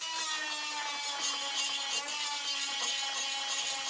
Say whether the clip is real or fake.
real